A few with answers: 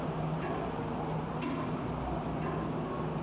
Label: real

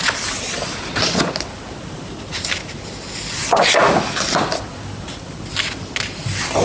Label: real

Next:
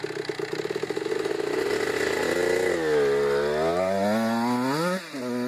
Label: real